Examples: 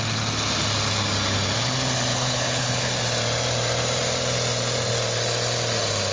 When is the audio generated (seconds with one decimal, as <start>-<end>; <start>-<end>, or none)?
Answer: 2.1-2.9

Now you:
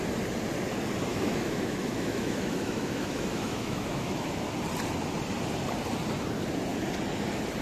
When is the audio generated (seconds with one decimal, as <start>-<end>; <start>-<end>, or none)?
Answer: 1.1-4.3

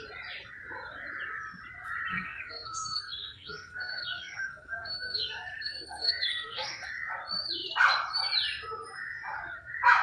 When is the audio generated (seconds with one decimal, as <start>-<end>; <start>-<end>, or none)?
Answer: 2.1-6.9

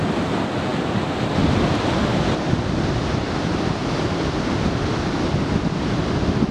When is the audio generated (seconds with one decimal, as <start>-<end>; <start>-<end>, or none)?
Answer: none